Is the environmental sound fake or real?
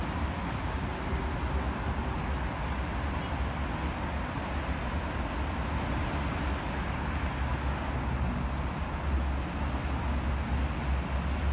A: real